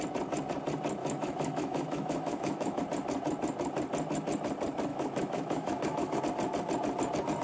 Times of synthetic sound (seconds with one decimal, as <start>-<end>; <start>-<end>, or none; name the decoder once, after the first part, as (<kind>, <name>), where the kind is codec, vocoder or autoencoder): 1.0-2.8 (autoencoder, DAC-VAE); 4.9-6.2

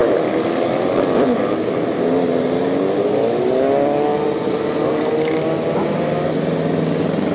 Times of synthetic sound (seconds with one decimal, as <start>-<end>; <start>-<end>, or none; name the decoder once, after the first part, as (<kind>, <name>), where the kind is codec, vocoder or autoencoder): 0.0-1.4 (vocoder, BigVGAN v2); 4.1-4.8

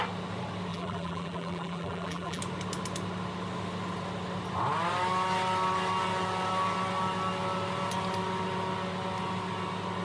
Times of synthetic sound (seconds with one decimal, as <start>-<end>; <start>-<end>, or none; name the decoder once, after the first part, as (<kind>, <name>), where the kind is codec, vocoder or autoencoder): 0.7-2.4 (vocoder, BigVGAN v2)

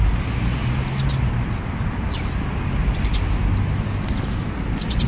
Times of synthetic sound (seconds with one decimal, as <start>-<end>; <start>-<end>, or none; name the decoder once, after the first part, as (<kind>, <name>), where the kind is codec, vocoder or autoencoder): none

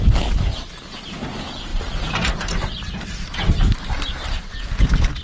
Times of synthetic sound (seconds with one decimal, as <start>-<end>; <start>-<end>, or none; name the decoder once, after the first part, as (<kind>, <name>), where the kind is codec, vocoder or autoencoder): 1.7-4.8 (vocoder, BigVGAN v2)

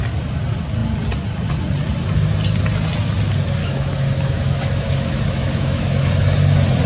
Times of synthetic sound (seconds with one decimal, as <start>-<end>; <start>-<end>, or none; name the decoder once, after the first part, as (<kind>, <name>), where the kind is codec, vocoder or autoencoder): 3.6-6.1 (autoencoder, DAC-VAE)